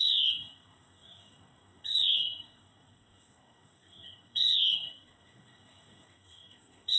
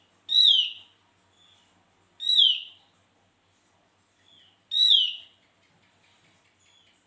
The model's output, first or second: first